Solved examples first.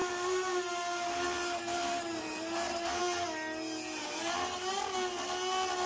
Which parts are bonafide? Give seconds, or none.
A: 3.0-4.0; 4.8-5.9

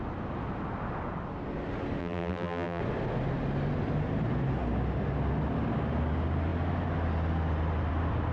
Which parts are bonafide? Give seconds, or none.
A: 0.0-2.0; 2.8-8.3

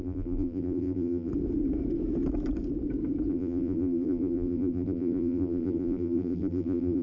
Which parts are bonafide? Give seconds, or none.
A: 1.3-3.3

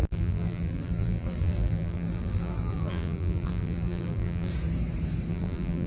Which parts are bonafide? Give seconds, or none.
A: 4.5-5.3